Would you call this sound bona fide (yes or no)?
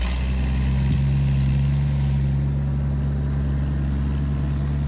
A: yes